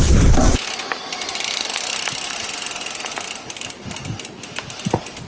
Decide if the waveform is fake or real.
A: real